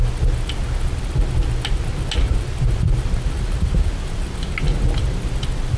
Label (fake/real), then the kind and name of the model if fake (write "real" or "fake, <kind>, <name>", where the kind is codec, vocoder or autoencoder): real